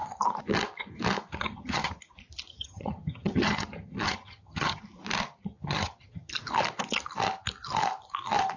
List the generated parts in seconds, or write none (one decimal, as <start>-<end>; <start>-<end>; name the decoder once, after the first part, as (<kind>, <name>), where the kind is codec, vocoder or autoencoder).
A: 1.3-2.0 (vocoder, HiFi-GAN); 2.5-4.8; 5.5-6.3